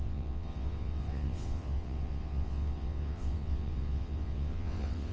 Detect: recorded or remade remade